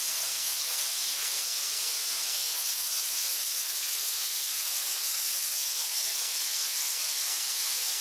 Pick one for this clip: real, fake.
fake